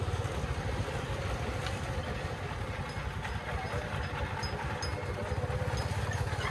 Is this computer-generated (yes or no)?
no